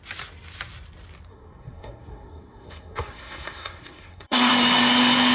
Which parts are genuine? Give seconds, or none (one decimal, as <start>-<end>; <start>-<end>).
0.0-1.3; 4.5-5.3

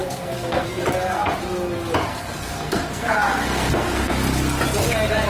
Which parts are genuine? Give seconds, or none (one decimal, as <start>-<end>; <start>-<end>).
1.3-2.1; 4.1-5.3

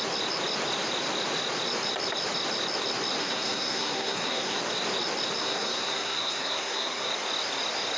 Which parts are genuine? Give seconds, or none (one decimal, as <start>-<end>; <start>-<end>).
0.0-3.2; 4.6-5.4; 7.1-8.0

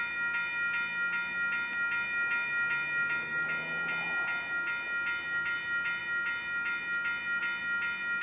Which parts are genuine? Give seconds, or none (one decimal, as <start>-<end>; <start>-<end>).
0.0-8.2